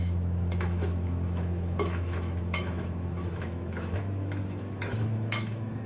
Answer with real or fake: fake